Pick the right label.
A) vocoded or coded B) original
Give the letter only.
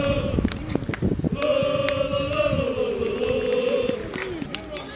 B